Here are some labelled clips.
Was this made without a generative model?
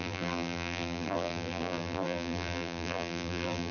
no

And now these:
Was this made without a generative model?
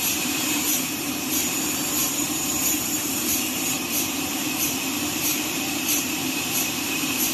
no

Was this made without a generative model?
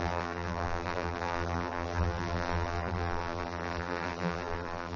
no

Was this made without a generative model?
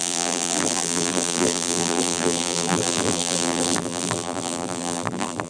no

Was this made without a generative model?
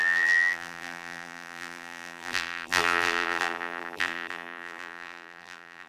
no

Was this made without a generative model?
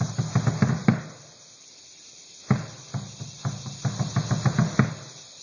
yes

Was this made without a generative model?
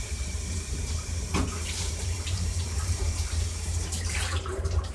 no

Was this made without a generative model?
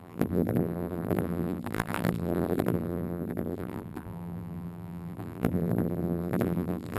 no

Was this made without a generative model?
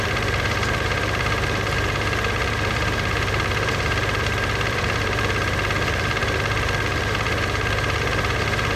no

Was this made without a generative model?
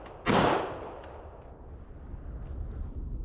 yes